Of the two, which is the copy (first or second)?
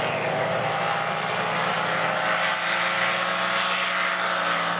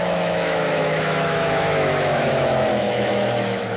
second